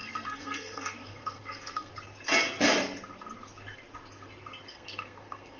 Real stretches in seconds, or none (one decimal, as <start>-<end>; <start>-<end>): 1.9-4.7

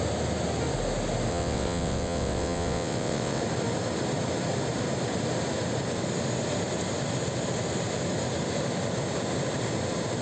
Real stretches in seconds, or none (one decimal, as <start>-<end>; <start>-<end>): 0.0-1.3; 3.4-10.2

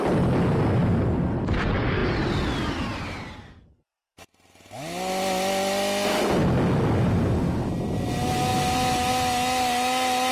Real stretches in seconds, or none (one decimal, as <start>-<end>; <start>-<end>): 0.0-10.3